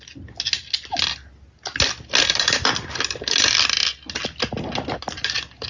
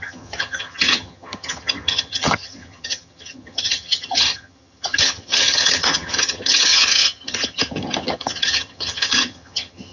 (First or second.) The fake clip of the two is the second